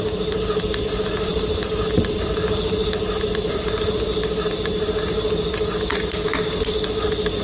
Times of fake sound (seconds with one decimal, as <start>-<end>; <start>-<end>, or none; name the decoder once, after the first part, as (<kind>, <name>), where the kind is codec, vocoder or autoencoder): none